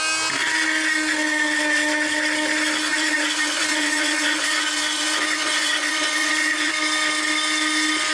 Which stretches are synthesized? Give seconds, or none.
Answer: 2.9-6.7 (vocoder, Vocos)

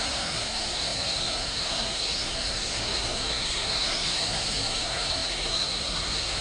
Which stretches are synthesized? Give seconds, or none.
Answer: 0.0-6.4 (codec, SNAC)